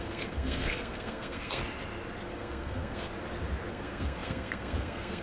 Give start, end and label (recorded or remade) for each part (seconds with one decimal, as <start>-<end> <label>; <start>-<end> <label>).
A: 0.0-1.6 remade; 1.6-2.3 recorded; 2.3-3.1 remade; 3.1-3.7 recorded; 3.7-5.2 remade